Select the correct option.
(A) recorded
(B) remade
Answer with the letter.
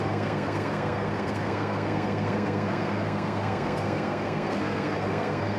B